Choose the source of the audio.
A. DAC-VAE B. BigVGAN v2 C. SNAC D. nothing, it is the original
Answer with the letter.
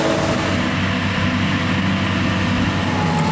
D